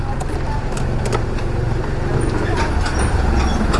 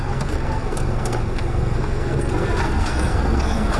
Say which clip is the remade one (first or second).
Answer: second